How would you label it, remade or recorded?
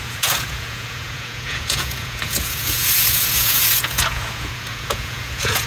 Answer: remade